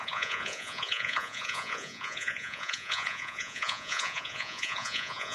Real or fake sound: fake